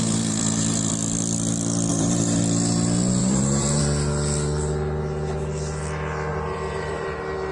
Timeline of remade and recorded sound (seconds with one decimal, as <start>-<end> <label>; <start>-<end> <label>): 0.0-0.9 remade; 0.9-1.9 recorded; 1.9-2.4 remade; 2.4-3.2 recorded; 3.2-3.8 remade; 3.8-6.3 recorded; 6.3-7.5 remade